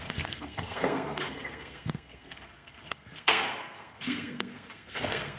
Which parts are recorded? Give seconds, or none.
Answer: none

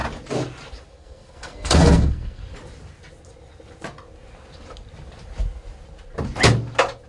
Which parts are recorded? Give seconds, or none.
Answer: 0.0-0.9; 2.4-7.1

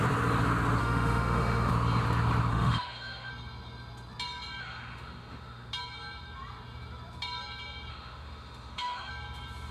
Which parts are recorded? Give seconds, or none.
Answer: 0.0-0.8; 1.7-2.5; 3.3-4.6; 5.7-7.9; 9.1-9.7

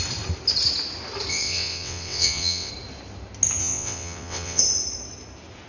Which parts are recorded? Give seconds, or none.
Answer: 0.0-1.3; 2.7-3.6; 4.6-5.7